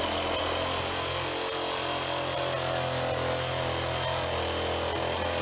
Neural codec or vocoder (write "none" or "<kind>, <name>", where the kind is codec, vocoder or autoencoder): none